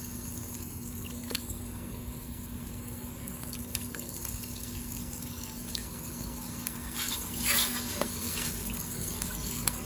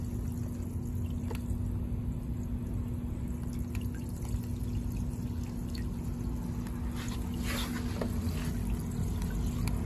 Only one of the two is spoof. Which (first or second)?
first